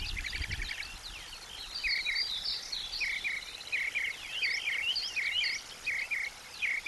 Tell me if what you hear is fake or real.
real